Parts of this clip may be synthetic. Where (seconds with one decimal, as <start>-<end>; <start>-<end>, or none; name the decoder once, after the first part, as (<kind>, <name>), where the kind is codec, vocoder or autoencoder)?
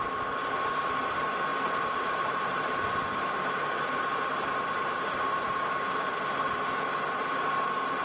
1.5-5.9 (vocoder, BigVGAN v2)